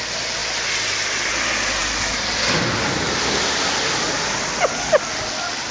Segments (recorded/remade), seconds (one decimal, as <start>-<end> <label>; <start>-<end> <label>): 0.0-5.7 recorded